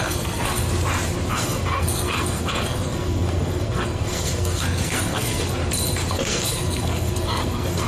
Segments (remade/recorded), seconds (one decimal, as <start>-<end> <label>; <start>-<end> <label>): 0.0-0.6 remade; 0.6-1.3 recorded; 1.3-5.6 remade; 5.6-6.1 recorded; 6.1-7.9 remade